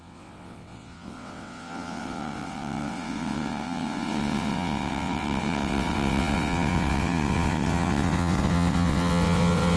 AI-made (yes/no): yes